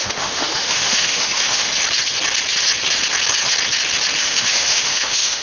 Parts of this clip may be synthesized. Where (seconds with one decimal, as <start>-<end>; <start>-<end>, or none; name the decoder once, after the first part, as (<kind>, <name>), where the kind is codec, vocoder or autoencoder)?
0.0-1.7 (autoencoder, DAC-VAE); 4.2-5.4